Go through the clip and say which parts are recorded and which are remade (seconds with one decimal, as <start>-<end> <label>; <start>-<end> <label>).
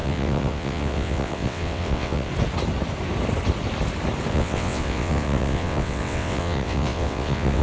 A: 0.0-2.3 remade; 2.3-4.3 recorded; 4.3-7.6 remade